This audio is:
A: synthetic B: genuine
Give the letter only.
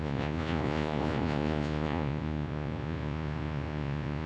A